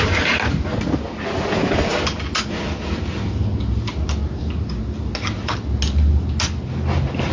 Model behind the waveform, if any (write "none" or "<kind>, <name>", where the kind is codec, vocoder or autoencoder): none